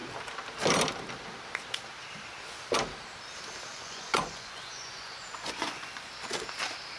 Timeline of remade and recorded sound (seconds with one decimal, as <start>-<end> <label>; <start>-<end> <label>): 0.0-3.7 recorded; 3.7-6.1 remade; 6.1-7.0 recorded